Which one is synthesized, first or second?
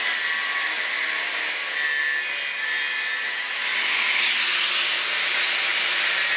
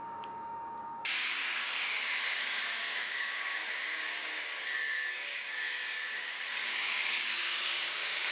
second